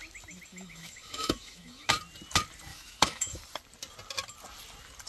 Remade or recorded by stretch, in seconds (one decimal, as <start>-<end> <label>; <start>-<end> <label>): 0.0-0.5 recorded; 0.5-1.9 remade; 1.9-2.7 recorded; 2.7-3.4 remade; 3.4-5.1 recorded